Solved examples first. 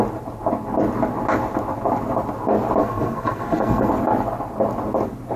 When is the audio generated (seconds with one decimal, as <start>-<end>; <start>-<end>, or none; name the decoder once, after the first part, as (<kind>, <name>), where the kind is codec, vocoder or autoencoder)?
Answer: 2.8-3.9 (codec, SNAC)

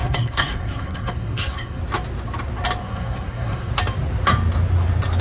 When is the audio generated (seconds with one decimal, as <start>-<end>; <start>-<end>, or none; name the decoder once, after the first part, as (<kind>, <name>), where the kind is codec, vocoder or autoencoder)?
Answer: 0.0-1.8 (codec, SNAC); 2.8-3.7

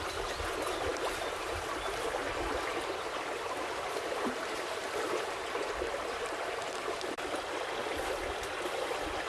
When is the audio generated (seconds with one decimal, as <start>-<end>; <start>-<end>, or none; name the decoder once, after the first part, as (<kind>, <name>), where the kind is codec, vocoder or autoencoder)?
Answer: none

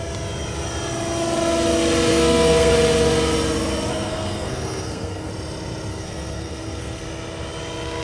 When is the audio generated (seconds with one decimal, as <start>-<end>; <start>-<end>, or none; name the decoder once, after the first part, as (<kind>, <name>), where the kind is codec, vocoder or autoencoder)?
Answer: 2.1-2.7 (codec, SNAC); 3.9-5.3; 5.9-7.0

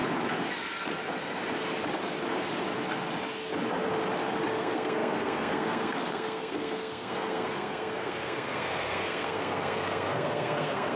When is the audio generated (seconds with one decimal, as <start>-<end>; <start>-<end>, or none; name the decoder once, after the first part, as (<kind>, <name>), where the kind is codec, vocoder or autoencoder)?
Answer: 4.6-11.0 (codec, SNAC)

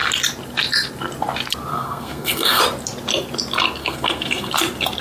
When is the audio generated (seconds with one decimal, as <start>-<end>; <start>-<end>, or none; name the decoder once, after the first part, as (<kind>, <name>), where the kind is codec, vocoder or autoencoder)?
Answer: 1.7-2.6 (codec, SNAC); 3.8-4.5

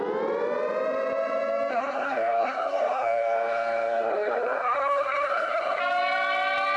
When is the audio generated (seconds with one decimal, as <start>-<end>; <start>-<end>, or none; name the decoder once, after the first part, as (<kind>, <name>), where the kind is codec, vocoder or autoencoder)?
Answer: 1.7-5.8 (codec, SNAC)

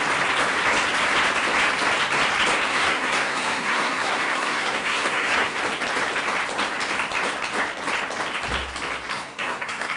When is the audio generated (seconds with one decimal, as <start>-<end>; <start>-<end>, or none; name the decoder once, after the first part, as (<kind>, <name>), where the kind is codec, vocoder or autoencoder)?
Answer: 2.7-5.6 (codec, SNAC); 9.1-10.0